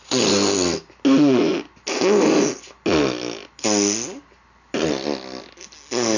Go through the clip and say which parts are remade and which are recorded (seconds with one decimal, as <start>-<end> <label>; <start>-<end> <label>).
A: 0.0-6.2 recorded